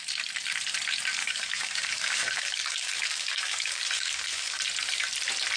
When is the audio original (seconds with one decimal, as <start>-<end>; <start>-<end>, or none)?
0.0-1.2; 4.6-5.6